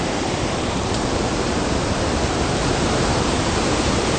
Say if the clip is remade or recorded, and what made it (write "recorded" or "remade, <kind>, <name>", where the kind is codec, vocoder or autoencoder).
remade, vocoder, BigVGAN v2